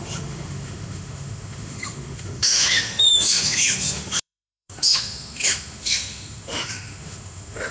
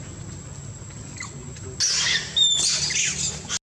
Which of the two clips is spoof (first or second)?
first